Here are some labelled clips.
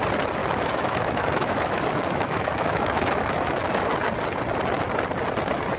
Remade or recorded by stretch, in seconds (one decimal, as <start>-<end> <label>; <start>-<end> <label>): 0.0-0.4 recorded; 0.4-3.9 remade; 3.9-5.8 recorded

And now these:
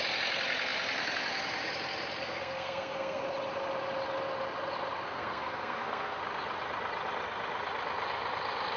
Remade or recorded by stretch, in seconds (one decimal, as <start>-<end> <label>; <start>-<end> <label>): 0.0-2.2 recorded; 2.2-3.2 remade; 3.2-5.0 recorded; 5.0-6.2 remade; 6.2-8.8 recorded

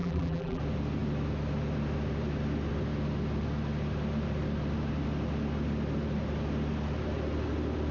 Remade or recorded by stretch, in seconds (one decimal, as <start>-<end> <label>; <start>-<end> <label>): 0.0-0.6 remade; 0.6-7.9 recorded

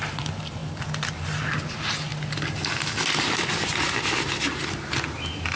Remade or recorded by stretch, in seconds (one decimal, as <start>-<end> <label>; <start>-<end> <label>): 0.0-5.6 recorded

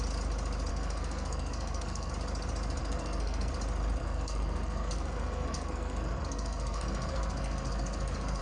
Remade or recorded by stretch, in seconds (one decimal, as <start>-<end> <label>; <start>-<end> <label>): 0.0-0.7 recorded; 0.7-2.1 remade; 2.1-2.8 recorded; 2.8-3.5 remade; 3.5-4.0 recorded; 4.0-8.4 remade